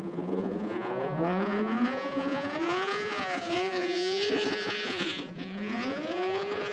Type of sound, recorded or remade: remade